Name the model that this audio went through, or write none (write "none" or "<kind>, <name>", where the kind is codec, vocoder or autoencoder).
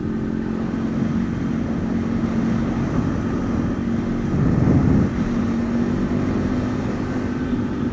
none